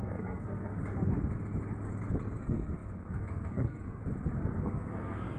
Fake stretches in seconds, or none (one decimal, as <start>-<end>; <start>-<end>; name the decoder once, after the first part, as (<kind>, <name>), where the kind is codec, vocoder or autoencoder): 0.0-0.8 (codec, SNAC); 2.4-4.0; 4.6-5.4